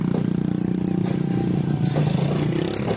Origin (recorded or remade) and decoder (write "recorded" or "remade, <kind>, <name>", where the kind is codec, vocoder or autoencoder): recorded